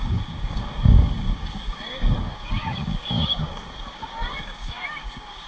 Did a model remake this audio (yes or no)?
yes